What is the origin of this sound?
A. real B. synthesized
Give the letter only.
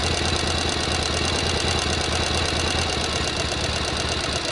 A